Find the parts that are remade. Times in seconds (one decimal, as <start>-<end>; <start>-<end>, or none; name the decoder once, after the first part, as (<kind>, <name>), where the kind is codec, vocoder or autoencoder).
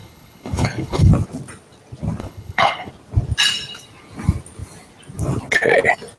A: 0.0-1.1 (codec, HILCodec); 2.2-2.9